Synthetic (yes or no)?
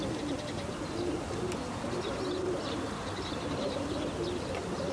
no